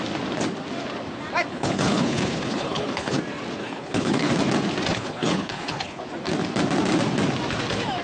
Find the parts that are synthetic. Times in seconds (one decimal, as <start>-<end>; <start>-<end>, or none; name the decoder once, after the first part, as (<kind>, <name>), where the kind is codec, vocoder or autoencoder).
1.5-3.2 (codec, HILCodec); 3.6-4.3; 4.9-6.0